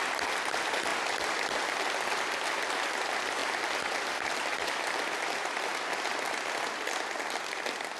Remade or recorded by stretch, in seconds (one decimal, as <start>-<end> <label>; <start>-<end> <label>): 0.0-0.9 remade; 0.9-2.5 recorded; 2.5-3.4 remade; 3.4-4.3 recorded; 4.3-5.7 remade; 5.7-7.5 recorded; 7.5-8.0 remade